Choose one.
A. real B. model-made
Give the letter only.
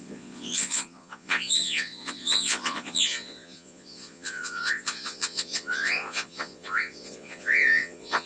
B